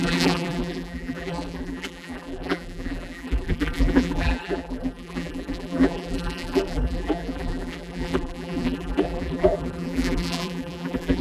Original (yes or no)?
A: no